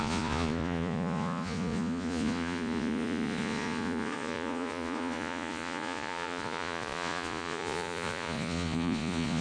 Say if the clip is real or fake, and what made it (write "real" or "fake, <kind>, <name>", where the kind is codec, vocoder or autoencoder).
fake, vocoder, Vocos